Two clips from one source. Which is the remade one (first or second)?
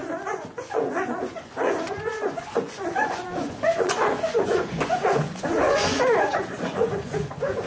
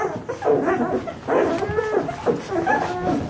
first